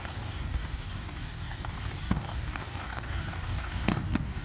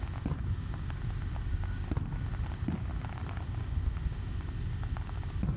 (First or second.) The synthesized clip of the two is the first